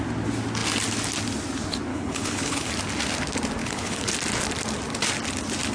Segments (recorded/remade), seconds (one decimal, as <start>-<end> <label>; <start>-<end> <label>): 0.0-1.9 recorded; 1.9-2.7 remade; 2.7-3.6 recorded; 3.6-4.1 remade; 4.1-5.7 recorded